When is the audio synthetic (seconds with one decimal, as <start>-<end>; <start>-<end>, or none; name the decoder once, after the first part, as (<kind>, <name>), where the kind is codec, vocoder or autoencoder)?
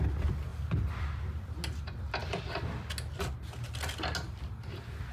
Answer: none